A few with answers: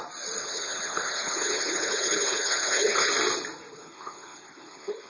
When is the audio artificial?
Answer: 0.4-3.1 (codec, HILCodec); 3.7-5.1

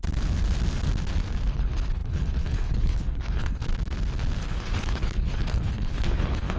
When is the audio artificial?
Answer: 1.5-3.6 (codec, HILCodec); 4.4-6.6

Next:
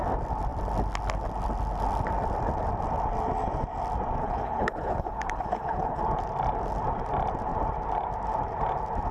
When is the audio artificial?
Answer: 4.2-6.0 (codec, HILCodec)